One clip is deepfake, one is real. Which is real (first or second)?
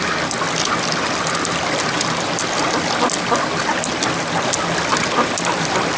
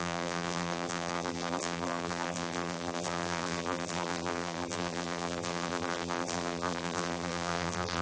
first